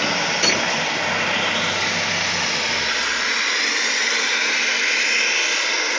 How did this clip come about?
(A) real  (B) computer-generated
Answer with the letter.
A